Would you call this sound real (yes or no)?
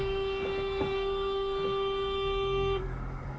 no